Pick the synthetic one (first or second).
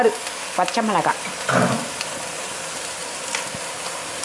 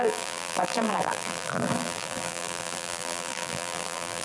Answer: second